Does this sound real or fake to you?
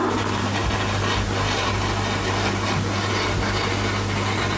real